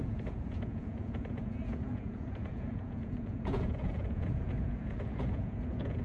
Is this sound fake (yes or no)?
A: yes